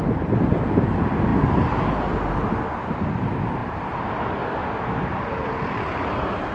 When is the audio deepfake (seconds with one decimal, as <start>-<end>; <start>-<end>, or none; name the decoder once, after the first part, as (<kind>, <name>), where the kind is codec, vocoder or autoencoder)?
3.6-4.1 (vocoder, BigVGAN v2); 4.6-6.0